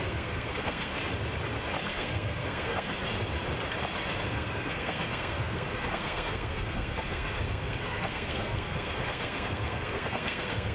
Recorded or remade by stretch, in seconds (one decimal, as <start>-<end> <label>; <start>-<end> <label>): 0.0-0.9 remade; 0.9-1.9 recorded; 1.9-2.9 remade; 2.9-4.3 recorded; 4.3-10.7 remade